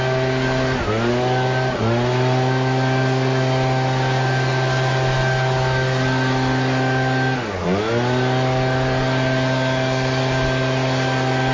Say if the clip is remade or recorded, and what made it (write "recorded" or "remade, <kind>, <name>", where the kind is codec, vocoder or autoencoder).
recorded